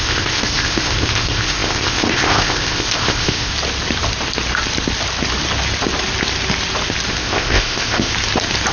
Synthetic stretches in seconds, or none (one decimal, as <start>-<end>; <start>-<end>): 0.0-3.5; 7.1-8.1